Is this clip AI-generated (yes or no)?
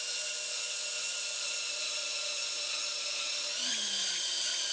no